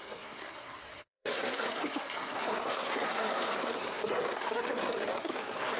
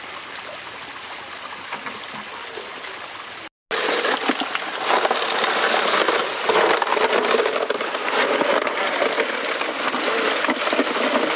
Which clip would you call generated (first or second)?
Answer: first